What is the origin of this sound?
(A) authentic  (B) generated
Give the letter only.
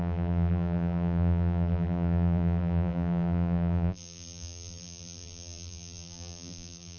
B